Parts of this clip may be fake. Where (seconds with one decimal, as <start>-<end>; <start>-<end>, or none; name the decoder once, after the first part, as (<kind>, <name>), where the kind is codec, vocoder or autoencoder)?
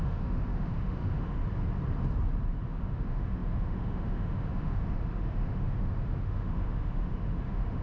0.0-1.4 (autoencoder, DAC-VAE); 2.6-7.8